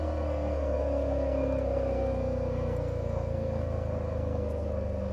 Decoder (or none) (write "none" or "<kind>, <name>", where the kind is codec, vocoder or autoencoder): codec, SNAC